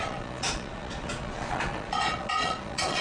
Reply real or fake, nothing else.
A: fake